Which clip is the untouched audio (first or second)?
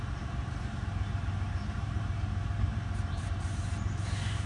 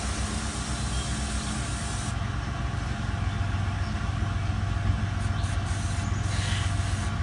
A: second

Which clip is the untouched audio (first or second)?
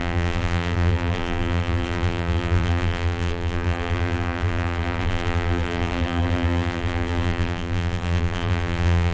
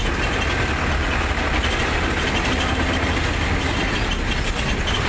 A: second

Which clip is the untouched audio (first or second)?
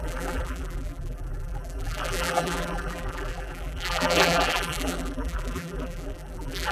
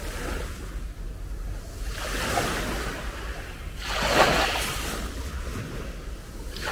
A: second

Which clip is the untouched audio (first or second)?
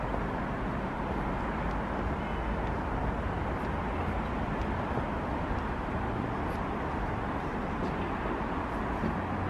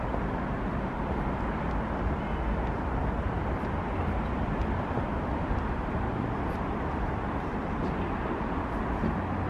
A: first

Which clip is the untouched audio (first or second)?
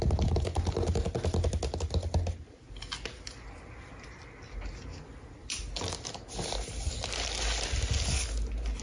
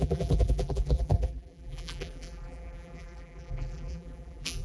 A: first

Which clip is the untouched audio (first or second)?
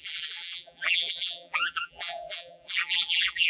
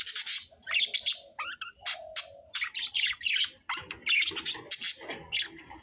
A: second